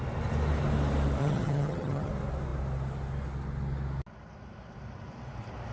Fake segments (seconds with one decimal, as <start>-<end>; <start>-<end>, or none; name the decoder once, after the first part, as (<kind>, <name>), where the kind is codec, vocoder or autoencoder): 1.2-2.1 (vocoder, HiFi-GAN)